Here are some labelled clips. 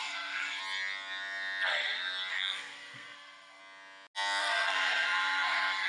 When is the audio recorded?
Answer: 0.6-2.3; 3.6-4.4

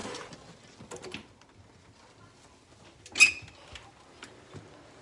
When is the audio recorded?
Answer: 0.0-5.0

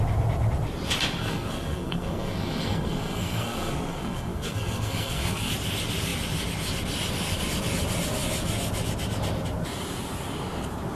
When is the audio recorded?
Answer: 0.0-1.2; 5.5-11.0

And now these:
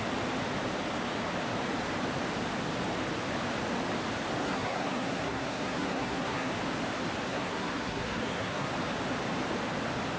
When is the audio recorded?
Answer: 0.0-4.4; 6.5-7.3; 8.7-10.2